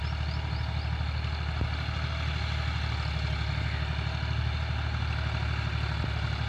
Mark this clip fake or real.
real